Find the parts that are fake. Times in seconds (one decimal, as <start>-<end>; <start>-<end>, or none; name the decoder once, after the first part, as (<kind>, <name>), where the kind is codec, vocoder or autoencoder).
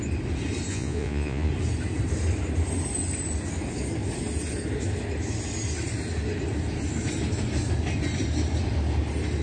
0.7-1.5 (vocoder, Vocos)